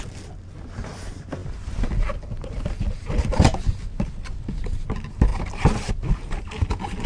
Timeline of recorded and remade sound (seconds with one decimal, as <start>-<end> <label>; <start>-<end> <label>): 0.0-7.1 recorded

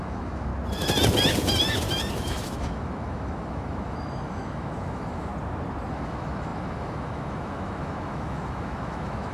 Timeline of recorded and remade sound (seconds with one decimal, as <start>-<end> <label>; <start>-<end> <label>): 0.0-0.5 remade; 0.5-2.1 recorded; 2.1-5.3 remade; 5.3-5.9 recorded; 5.9-9.3 remade

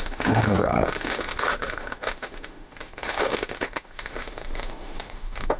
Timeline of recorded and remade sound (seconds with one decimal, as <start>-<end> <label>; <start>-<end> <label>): 0.0-5.6 remade

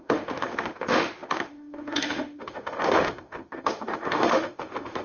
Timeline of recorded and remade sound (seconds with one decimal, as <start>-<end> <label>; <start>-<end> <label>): 0.0-5.0 remade

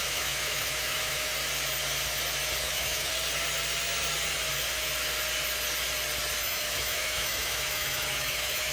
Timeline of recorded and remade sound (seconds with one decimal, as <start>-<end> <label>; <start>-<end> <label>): 0.0-1.3 remade; 1.3-2.6 recorded; 2.6-3.1 remade; 3.1-6.4 recorded; 6.4-8.7 remade

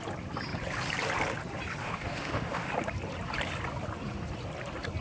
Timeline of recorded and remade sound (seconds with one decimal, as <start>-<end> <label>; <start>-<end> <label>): 0.0-1.8 recorded; 1.8-2.7 remade; 2.7-5.0 recorded

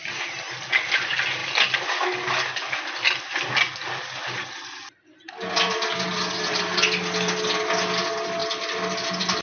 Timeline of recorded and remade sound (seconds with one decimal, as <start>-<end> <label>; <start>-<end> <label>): 0.0-9.4 recorded